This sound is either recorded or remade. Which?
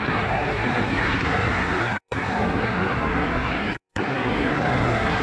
remade